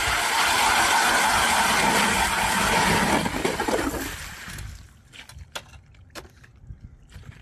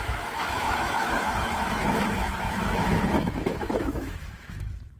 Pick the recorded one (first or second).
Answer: first